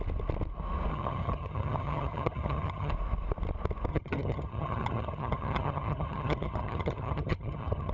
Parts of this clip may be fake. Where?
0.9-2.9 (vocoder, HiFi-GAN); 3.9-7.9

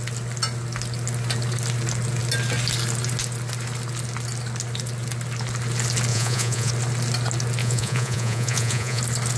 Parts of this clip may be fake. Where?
6.1-6.7 (vocoder, Vocos); 7.6-9.0